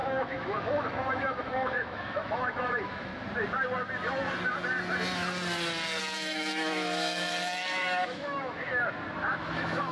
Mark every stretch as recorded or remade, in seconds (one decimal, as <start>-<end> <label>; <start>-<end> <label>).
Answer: 0.0-3.1 remade; 3.1-6.0 recorded; 6.0-8.7 remade; 8.7-9.3 recorded; 9.3-9.9 remade